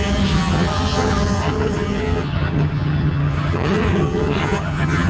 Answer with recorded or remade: remade